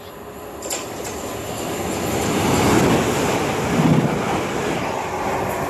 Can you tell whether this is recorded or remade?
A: recorded